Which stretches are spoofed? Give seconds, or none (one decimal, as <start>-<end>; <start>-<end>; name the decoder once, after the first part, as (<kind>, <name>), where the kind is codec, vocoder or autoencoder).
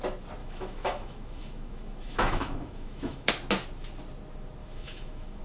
0.4-3.3 (autoencoder, DAC-VAE); 4.6-5.4